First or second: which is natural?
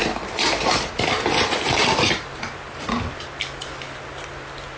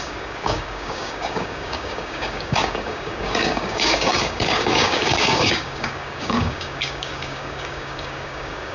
first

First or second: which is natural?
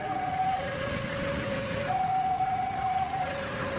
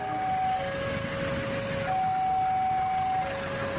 second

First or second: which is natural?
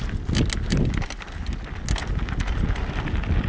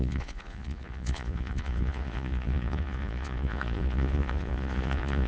first